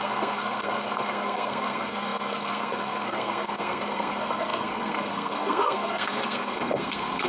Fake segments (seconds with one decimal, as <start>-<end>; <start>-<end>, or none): 0.0-7.3